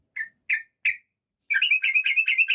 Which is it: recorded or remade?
recorded